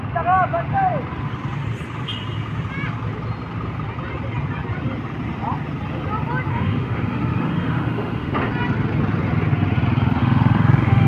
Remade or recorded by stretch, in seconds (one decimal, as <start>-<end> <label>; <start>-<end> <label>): 0.0-6.5 recorded; 6.5-8.5 remade; 8.5-10.2 recorded; 10.2-11.1 remade